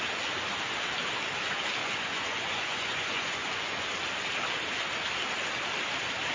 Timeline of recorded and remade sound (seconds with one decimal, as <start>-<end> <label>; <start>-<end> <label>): 0.0-1.8 recorded; 1.8-3.8 remade; 3.8-6.3 recorded